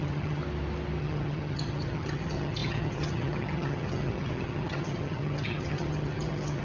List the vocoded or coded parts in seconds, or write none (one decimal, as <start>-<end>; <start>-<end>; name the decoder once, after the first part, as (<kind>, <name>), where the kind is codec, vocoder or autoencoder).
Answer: 0.0-0.4 (vocoder, HiFi-GAN); 1.0-6.6